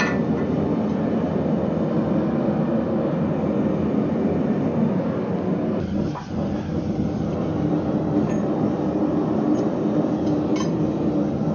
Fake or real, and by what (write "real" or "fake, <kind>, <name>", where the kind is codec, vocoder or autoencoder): real